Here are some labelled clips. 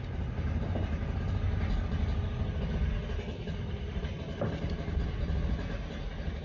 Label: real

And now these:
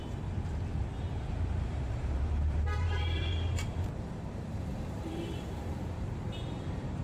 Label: fake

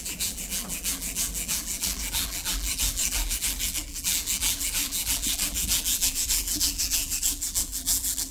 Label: fake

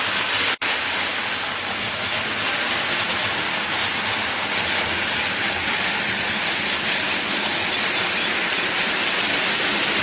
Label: real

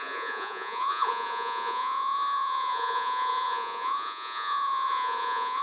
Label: fake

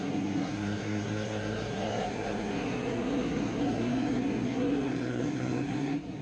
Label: fake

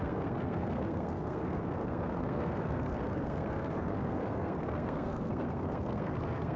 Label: fake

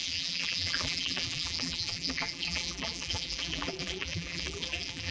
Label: fake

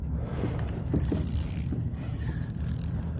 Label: fake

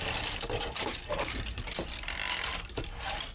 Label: real